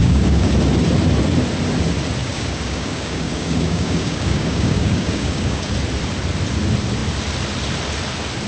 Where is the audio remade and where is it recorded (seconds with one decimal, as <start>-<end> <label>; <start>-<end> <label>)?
0.0-0.5 remade; 0.5-2.2 recorded; 2.2-5.7 remade; 5.7-8.5 recorded